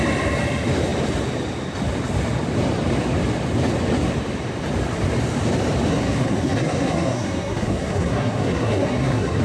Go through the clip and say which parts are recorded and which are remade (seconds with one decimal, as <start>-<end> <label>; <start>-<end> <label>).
0.0-5.9 recorded; 5.9-9.4 remade